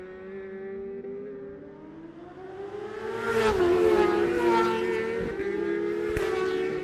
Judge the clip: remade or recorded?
recorded